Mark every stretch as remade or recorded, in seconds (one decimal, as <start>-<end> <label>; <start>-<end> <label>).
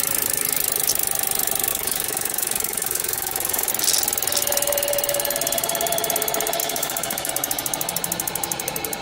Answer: 0.0-1.7 recorded; 1.7-3.7 remade; 3.7-6.6 recorded; 6.6-7.3 remade; 7.3-9.0 recorded